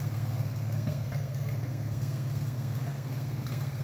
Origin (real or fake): fake